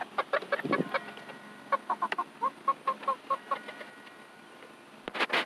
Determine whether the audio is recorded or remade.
recorded